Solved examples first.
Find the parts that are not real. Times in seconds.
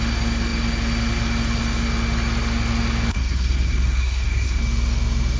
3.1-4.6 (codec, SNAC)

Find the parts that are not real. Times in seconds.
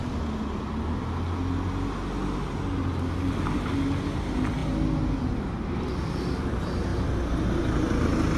none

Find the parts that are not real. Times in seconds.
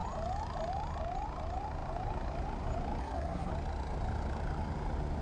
3.0-3.5 (codec, SNAC)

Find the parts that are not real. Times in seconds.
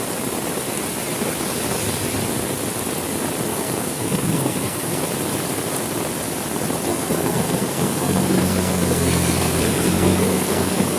3.5-5.0 (codec, SNAC); 6.9-11.0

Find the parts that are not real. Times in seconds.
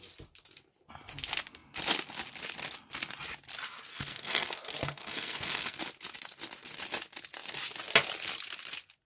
3.9-5.8 (codec, SNAC)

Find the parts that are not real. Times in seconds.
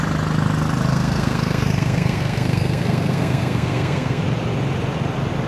0.9-4.2 (codec, SNAC)